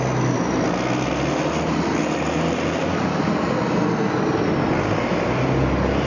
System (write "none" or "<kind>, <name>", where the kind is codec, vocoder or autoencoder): none